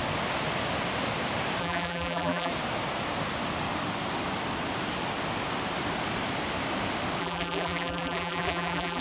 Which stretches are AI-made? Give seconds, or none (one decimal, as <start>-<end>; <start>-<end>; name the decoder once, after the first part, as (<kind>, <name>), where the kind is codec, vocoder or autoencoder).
1.6-2.5 (vocoder, BigVGAN v2); 7.2-9.0